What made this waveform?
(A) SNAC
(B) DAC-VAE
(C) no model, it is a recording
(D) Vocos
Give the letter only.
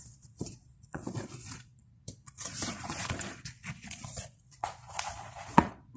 D